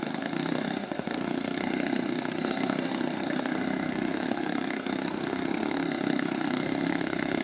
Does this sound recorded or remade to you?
remade